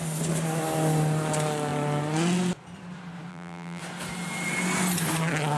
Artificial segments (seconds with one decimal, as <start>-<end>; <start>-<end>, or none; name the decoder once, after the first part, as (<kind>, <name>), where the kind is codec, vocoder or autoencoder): 3.3-3.8 (vocoder, BigVGAN v2)